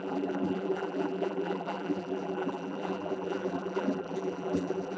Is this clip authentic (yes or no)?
no